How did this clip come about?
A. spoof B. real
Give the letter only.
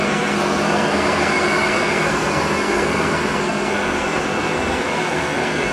A